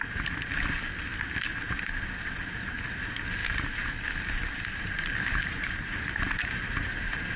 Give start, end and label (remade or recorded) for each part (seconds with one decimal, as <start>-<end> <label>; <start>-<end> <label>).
0.0-7.4 recorded